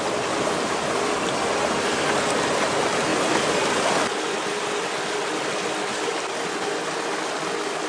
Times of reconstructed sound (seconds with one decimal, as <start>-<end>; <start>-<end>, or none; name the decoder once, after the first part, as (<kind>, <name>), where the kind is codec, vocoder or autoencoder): none